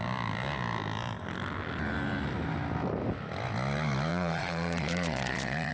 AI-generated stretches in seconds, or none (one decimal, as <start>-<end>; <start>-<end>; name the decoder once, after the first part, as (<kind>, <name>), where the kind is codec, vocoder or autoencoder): 4.1-5.7 (vocoder, Vocos)

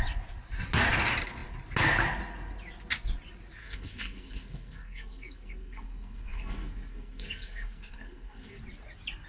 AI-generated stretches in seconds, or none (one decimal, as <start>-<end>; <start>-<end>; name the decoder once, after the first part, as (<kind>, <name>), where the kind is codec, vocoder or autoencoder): 3.6-8.6 (codec, SNAC)

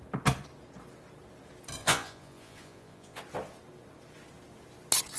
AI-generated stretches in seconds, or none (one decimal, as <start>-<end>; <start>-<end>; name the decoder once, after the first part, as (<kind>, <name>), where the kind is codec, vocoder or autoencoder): 1.8-3.2 (vocoder, Vocos)

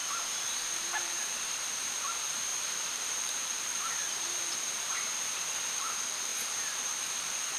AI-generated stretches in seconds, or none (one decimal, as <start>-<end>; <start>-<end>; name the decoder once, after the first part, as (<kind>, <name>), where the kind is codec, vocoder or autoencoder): 0.8-7.6 (vocoder, BigVGAN v2)